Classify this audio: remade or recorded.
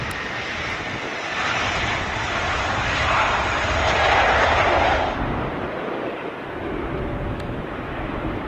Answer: recorded